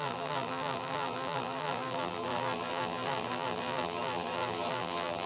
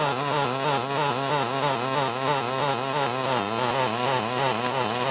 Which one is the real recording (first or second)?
second